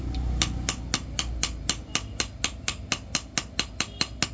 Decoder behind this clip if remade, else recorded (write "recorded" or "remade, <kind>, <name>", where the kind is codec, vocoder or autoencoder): recorded